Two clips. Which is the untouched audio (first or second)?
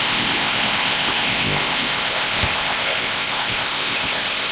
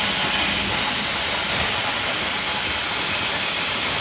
second